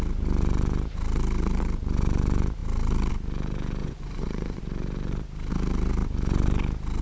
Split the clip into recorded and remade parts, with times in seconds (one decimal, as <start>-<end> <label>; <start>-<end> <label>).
0.0-3.8 recorded; 3.8-4.6 remade; 4.6-7.0 recorded